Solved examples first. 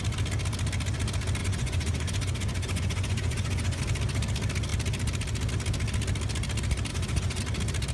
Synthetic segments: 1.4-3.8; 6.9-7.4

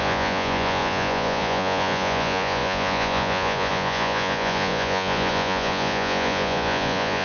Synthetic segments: 0.0-7.2